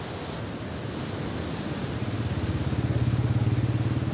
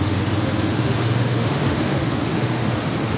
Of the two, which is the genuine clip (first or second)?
first